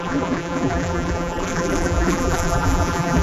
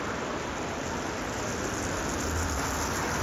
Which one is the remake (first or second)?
first